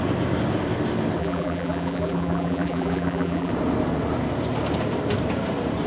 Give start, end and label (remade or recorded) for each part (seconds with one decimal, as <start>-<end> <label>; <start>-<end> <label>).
0.0-1.2 recorded; 1.2-3.5 remade; 3.5-5.9 recorded